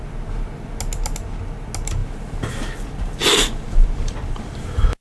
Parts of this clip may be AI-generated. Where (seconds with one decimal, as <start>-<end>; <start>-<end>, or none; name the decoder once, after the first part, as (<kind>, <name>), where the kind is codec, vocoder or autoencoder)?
2.0-5.0 (vocoder, BigVGAN v2)